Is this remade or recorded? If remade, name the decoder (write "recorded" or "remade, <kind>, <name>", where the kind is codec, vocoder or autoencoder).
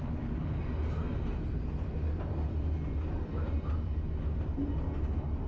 recorded